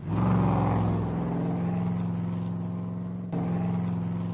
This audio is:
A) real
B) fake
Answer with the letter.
A